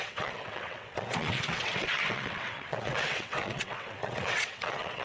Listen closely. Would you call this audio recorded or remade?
remade